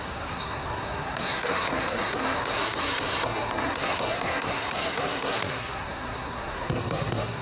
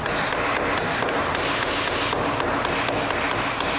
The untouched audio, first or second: second